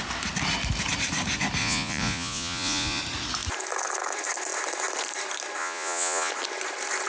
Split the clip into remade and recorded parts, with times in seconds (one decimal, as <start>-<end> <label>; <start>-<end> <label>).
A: 0.0-1.6 recorded; 1.6-3.0 remade; 3.0-5.6 recorded; 5.6-6.3 remade; 6.3-7.1 recorded